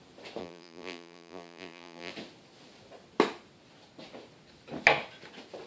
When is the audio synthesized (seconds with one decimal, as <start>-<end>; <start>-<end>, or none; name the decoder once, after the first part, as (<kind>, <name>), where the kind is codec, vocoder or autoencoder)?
0.4-2.1 (vocoder, BigVGAN v2)